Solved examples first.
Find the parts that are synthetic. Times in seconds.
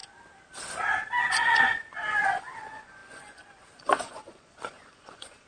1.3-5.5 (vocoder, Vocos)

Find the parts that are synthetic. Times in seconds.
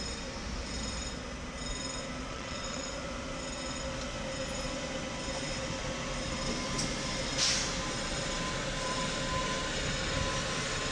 2.3-2.9 (vocoder, Vocos)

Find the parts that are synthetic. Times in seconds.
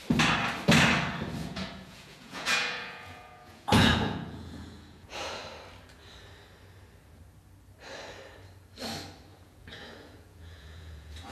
1.4-5.4 (vocoder, Vocos); 9.3-11.3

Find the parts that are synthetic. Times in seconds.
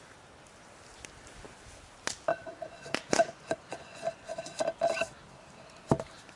2.3-4.6 (vocoder, Vocos)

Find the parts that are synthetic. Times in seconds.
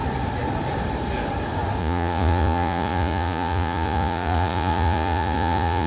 1.8-5.9 (vocoder, Vocos)